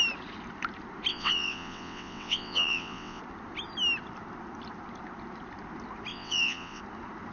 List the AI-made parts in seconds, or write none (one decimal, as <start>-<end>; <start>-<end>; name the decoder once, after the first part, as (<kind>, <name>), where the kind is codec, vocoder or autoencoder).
1.1-3.2 (vocoder, WaveNeXt); 6.1-6.8